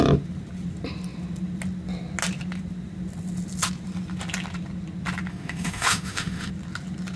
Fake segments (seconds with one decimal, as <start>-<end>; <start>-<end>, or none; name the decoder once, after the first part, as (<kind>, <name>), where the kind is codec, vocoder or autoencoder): 5.3-6.5 (autoencoder, DAC-VAE)